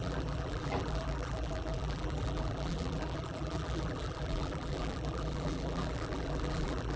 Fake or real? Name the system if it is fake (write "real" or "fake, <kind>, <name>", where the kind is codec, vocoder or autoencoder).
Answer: fake, vocoder, BigVGAN v2